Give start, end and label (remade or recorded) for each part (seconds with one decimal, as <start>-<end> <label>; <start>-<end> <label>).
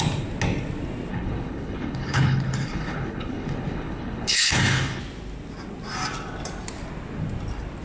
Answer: 0.0-1.1 recorded; 1.1-5.0 remade; 5.0-7.8 recorded